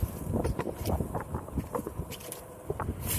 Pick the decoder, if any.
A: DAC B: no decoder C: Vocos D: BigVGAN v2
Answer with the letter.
D